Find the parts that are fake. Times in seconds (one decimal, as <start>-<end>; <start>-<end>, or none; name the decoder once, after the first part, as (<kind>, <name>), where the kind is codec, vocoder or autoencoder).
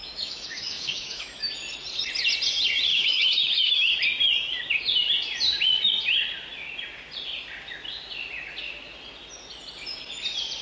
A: 0.0-1.5 (autoencoder, DAC-VAE); 2.9-3.9